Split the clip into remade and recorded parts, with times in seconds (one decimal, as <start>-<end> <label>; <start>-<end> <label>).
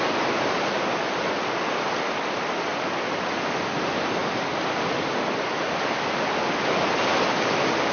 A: 0.0-7.9 recorded